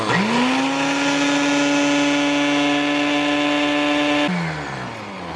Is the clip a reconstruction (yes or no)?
no